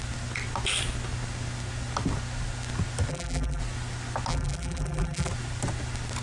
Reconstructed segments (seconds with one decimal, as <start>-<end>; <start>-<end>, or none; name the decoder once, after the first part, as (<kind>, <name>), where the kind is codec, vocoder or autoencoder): 3.1-3.6 (vocoder, BigVGAN v2); 4.3-5.3